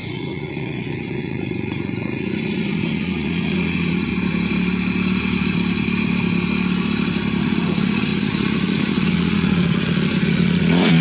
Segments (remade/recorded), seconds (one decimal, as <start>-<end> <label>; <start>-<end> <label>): 0.0-4.1 remade; 4.1-7.4 recorded; 7.4-11.0 remade